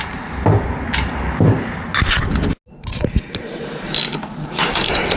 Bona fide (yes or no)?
yes